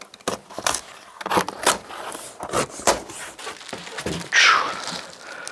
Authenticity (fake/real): real